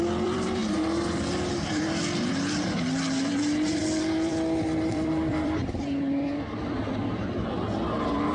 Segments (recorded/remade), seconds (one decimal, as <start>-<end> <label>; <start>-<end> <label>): 0.0-0.6 remade; 0.6-1.5 recorded; 1.5-8.3 remade